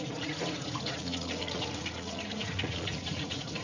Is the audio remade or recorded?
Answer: remade